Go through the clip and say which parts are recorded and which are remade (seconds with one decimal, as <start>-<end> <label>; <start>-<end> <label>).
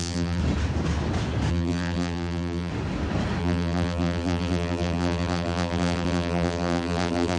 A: 0.0-0.4 remade; 0.4-1.5 recorded; 1.5-2.7 remade; 2.7-3.4 recorded; 3.4-7.4 remade